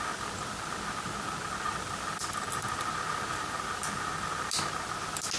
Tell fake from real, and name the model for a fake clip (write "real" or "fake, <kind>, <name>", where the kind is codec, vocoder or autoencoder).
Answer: real